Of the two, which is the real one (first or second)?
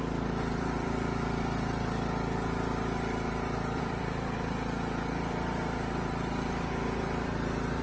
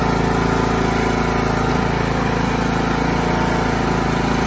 second